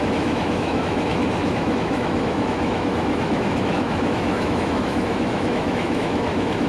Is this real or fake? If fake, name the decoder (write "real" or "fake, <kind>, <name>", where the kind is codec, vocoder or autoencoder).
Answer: fake, autoencoder, DAC-VAE